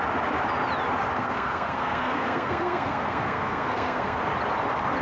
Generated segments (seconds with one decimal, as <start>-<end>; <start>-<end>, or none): 1.2-4.2